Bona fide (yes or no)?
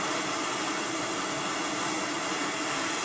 yes